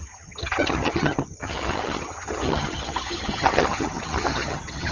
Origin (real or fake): fake